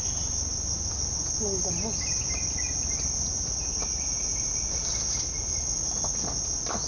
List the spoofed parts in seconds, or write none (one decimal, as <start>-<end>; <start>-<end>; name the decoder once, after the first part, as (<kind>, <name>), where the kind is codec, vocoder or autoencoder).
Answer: none